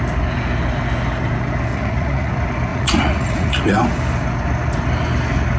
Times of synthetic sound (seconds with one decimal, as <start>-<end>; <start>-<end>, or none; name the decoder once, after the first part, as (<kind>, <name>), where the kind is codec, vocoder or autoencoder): 1.7-2.3 (vocoder, Vocos); 2.7-3.6